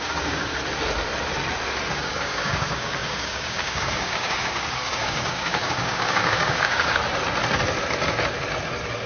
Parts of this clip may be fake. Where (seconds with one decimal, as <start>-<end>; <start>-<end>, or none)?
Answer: 0.0-0.5; 1.9-7.0